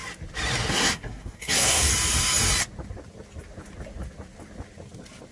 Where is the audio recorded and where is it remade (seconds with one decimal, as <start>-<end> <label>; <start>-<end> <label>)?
0.0-0.7 recorded; 0.7-1.9 remade; 1.9-5.3 recorded